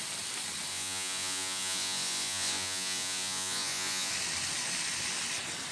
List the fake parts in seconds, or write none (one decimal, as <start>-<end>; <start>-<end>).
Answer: 0.7-4.1